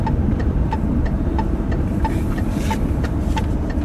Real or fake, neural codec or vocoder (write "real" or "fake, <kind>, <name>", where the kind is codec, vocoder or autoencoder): fake, vocoder, BigVGAN v2